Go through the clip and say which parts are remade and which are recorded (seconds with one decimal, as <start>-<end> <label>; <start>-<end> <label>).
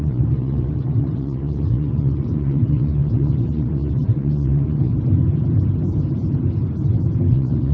0.0-4.9 remade; 4.9-7.3 recorded; 7.3-7.7 remade